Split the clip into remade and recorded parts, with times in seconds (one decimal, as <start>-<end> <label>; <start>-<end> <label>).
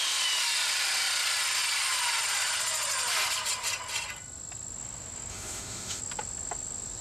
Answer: 0.0-5.3 recorded; 5.3-6.0 remade; 6.0-7.0 recorded